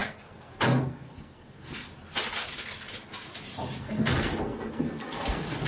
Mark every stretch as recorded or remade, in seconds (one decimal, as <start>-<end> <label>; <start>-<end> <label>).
0.0-1.9 remade; 1.9-3.8 recorded; 3.8-5.7 remade